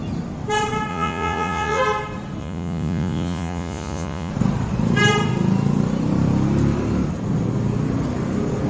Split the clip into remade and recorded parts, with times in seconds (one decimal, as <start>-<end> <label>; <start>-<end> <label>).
0.0-0.9 recorded; 0.9-1.8 remade; 1.8-2.4 recorded; 2.4-4.3 remade; 4.3-8.7 recorded